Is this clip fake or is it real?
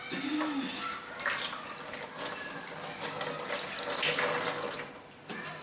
real